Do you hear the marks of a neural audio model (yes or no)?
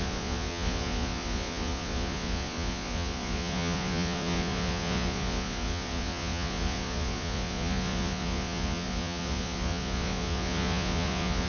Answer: yes